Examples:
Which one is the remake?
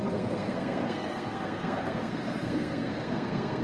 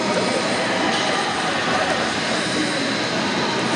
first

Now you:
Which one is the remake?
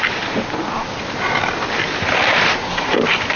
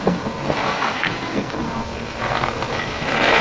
second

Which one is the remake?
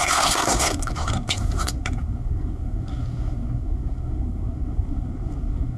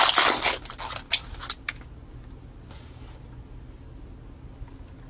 first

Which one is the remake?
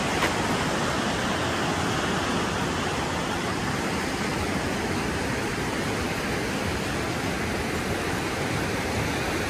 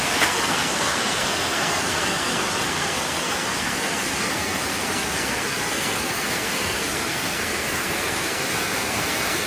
second